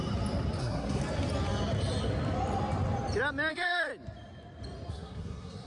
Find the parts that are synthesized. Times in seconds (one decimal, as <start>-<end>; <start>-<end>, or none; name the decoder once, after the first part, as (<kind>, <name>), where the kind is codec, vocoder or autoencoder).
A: 0.6-1.0 (codec, SNAC); 3.5-3.9; 4.9-5.7